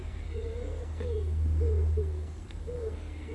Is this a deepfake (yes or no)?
yes